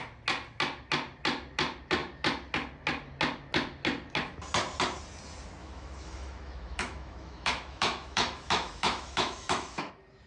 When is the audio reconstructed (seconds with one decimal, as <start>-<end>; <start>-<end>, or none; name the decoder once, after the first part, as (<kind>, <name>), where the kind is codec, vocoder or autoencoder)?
5.6-9.9 (autoencoder, DAC-VAE)